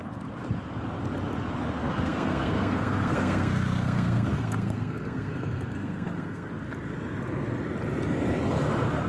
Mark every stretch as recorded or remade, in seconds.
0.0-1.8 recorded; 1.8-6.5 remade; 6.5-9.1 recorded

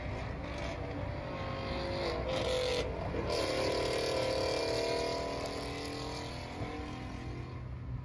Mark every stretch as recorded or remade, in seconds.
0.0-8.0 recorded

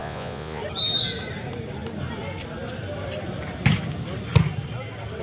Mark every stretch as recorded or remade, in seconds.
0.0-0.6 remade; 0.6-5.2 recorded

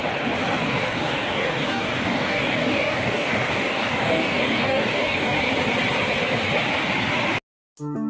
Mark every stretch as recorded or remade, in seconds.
0.0-0.6 recorded; 0.6-5.5 remade; 5.5-8.1 recorded

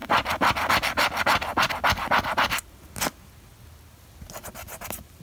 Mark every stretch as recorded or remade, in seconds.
0.0-0.7 remade; 0.7-5.2 recorded

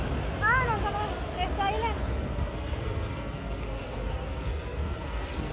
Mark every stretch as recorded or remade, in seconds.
0.0-2.0 recorded; 2.0-5.5 remade

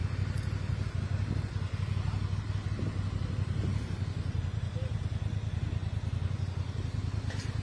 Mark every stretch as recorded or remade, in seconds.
0.0-7.6 recorded